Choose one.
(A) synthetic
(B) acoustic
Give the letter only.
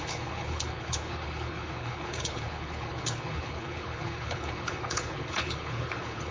A